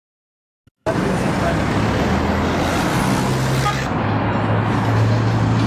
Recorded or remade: recorded